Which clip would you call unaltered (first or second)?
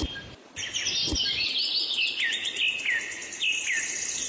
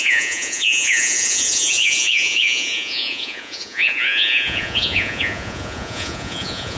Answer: first